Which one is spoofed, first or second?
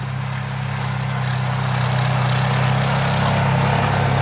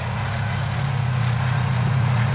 second